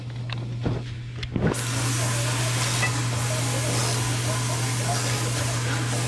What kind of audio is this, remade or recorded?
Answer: recorded